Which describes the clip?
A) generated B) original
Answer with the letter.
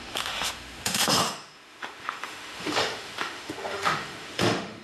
A